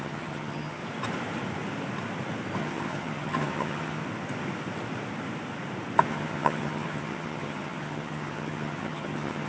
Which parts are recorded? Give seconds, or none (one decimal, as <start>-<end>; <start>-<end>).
0.8-2.6; 4.0-6.1